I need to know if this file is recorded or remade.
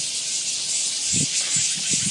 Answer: recorded